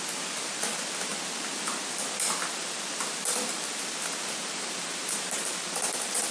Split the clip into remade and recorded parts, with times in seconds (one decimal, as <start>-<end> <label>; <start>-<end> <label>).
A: 0.0-6.3 recorded